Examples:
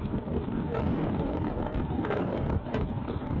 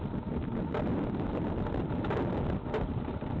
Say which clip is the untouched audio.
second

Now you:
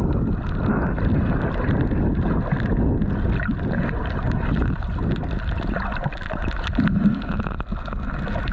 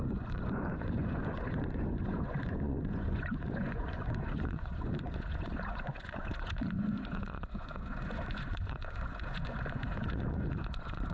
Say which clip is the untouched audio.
first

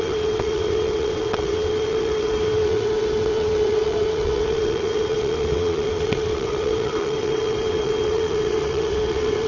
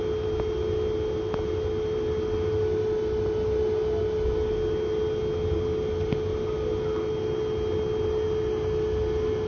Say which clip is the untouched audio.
second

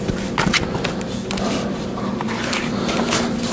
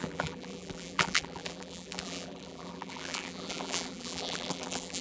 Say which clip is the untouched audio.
first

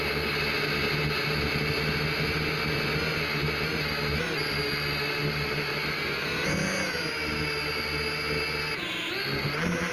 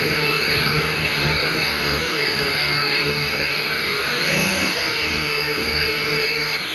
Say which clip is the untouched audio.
first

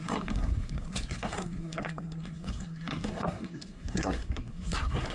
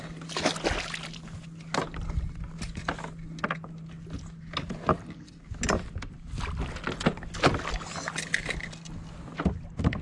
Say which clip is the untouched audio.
second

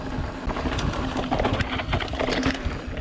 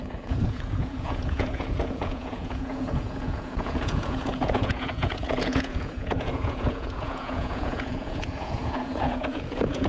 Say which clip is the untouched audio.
first